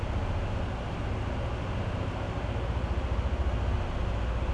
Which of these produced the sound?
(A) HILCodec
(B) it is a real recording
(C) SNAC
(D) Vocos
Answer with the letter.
B